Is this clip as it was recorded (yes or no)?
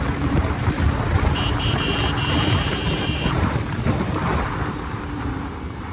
no